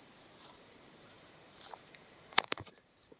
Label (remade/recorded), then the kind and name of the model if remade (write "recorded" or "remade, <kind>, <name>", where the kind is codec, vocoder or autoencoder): remade, vocoder, BigVGAN v2